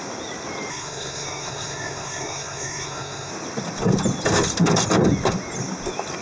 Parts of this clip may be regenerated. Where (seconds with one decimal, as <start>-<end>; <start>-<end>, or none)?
0.7-3.3